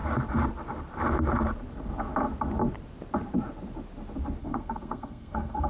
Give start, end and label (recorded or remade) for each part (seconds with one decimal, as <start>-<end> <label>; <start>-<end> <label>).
0.0-4.4 recorded; 4.4-5.7 remade